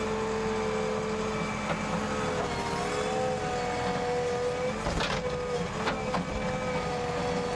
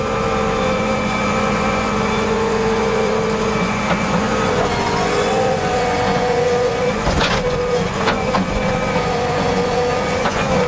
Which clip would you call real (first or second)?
first